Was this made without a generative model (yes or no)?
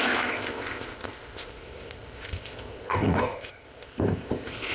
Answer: no